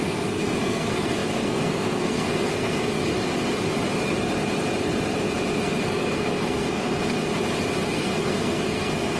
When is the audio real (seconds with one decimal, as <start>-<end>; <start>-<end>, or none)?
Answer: 3.1-5.6; 7.3-7.9

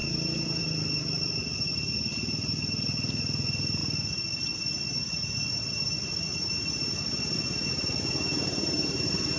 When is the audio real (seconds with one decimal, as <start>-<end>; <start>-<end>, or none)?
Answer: 0.6-8.3; 9.0-9.4

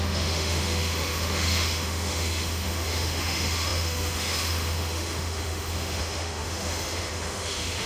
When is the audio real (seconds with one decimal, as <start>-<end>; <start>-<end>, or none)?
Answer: none

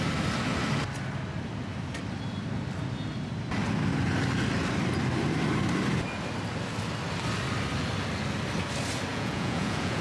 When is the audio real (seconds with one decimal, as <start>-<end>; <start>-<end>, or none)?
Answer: 0.0-9.1

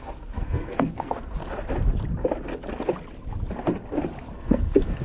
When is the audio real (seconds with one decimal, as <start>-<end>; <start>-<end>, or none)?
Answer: 1.4-4.3

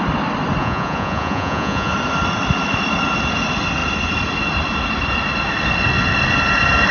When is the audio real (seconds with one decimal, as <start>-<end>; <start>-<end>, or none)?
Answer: 0.0-0.6; 1.9-6.9